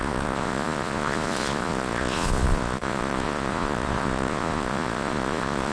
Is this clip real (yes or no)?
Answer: no